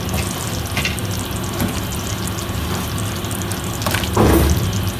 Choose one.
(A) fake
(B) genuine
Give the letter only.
B